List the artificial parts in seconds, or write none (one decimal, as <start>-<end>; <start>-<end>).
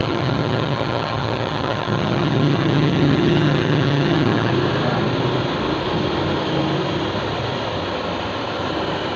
0.0-4.5